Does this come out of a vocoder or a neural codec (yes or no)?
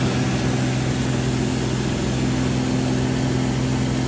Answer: no